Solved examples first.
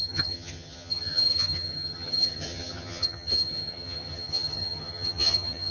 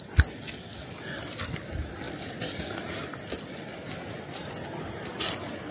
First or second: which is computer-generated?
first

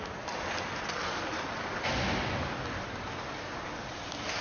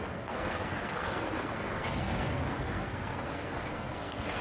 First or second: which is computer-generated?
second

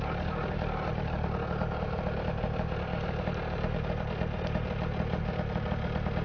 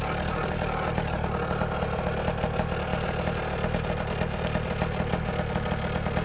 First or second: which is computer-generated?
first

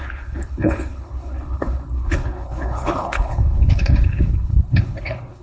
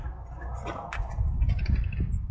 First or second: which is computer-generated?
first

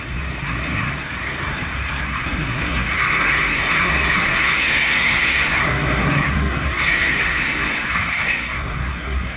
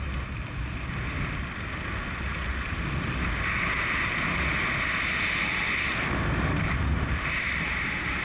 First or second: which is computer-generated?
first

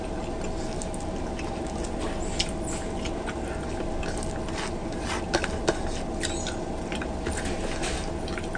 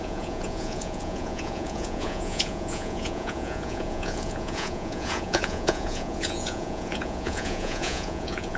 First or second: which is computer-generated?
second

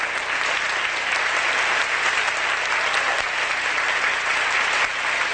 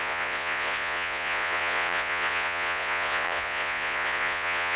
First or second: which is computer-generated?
second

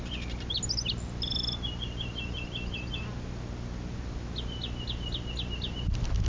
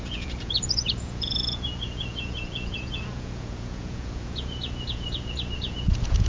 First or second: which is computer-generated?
second